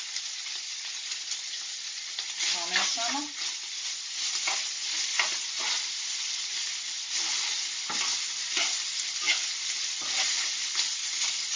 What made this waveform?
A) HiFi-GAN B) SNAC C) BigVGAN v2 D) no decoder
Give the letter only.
D